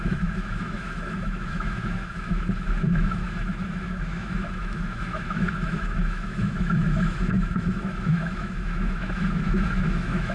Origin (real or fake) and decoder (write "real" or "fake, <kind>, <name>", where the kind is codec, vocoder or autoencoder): fake, autoencoder, DAC-VAE